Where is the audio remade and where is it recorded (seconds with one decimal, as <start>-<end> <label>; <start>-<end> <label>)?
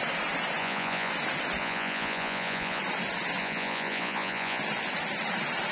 0.0-0.6 recorded; 0.6-1.1 remade; 1.1-1.6 recorded; 1.6-2.8 remade; 2.8-3.4 recorded; 3.4-4.6 remade; 4.6-5.7 recorded